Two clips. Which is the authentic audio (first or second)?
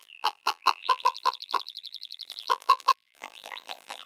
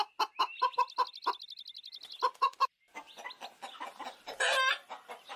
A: second